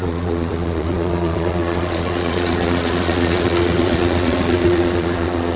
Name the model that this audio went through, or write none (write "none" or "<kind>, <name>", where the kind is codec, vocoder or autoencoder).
vocoder, Vocos